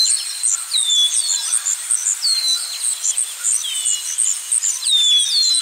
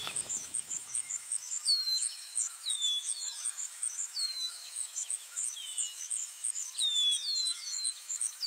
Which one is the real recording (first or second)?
first